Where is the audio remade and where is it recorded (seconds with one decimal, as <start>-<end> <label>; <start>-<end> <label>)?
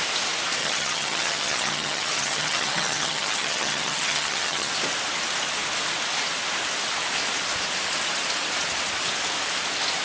0.0-0.6 recorded; 0.6-4.7 remade; 4.7-10.0 recorded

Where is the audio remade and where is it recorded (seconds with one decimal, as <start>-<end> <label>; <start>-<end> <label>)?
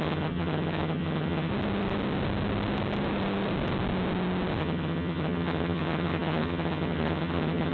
0.0-1.5 remade; 1.5-4.6 recorded; 4.6-7.7 remade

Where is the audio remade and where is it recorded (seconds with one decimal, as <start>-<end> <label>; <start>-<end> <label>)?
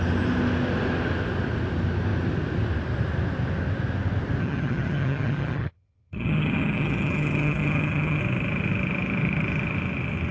0.0-4.4 recorded; 4.4-8.2 remade; 8.2-10.3 recorded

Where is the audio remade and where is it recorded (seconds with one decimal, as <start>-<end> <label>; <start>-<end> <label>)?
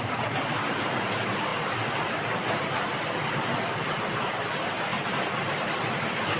0.0-6.4 recorded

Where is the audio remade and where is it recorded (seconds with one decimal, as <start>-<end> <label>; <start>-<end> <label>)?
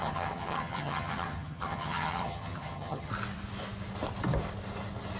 0.0-3.1 remade; 3.1-5.2 recorded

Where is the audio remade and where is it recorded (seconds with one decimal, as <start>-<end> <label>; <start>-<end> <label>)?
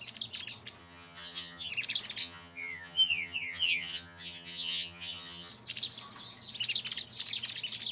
0.0-0.8 recorded; 0.8-1.7 remade; 1.7-2.2 recorded; 2.2-5.5 remade; 5.5-7.9 recorded